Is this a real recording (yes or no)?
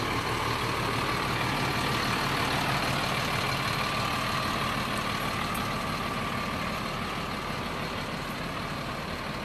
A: yes